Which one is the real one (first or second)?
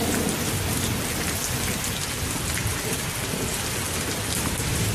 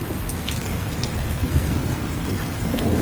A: first